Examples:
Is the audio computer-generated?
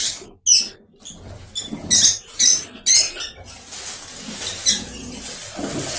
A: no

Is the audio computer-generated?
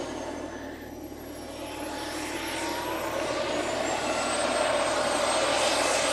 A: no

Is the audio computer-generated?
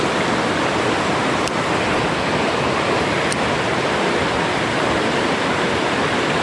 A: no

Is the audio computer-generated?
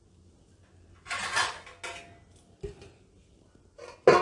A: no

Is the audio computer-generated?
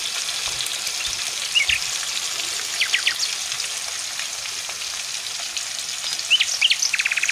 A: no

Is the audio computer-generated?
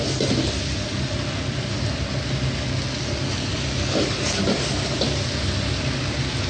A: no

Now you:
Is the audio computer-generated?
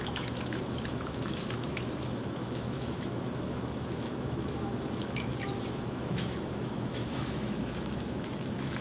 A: yes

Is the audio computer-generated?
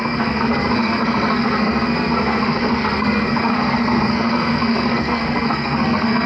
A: yes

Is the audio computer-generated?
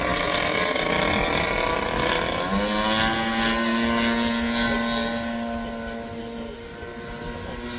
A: no